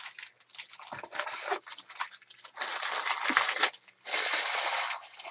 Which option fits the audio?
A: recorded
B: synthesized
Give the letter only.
A